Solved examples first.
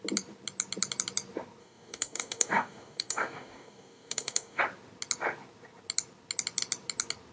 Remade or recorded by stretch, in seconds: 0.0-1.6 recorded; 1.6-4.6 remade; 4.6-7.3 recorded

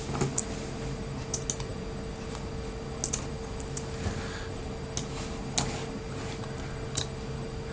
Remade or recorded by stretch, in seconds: 0.0-7.7 recorded

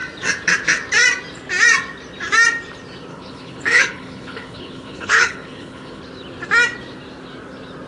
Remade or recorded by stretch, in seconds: 0.0-3.1 recorded; 3.1-6.0 remade; 6.0-7.9 recorded

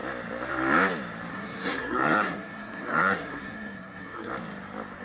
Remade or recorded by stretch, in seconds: 0.0-1.3 recorded; 1.3-4.3 remade; 4.3-5.0 recorded

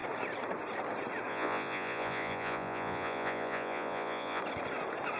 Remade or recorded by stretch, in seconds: 0.0-1.3 recorded; 1.3-4.4 remade; 4.4-5.2 recorded

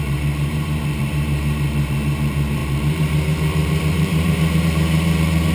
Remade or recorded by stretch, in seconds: 0.0-5.5 remade